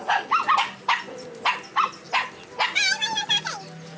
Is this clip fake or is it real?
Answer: real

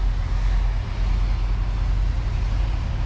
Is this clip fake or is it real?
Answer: real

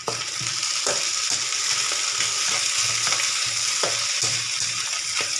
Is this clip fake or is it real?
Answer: real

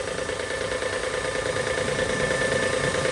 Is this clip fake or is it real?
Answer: real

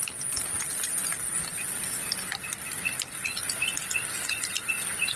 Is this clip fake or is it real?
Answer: real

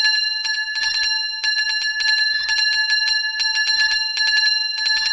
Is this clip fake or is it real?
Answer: real